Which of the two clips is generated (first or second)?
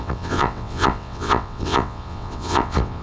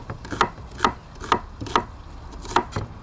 first